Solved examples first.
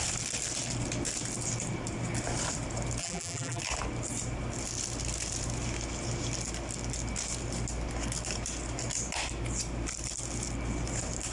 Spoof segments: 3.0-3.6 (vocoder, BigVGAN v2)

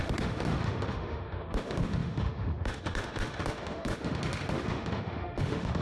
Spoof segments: 0.0-5.8 (autoencoder, DAC-VAE)